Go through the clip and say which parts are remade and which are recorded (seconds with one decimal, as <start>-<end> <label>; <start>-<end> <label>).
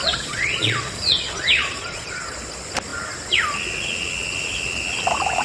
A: 0.0-2.2 remade; 2.2-5.4 recorded